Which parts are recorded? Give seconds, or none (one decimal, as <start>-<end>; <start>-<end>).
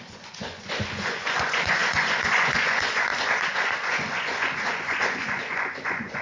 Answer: none